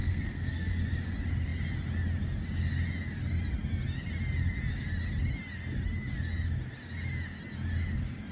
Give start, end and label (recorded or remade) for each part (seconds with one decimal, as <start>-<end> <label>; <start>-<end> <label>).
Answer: 0.0-0.7 remade; 0.7-8.3 recorded